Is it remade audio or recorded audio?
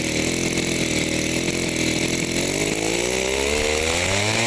recorded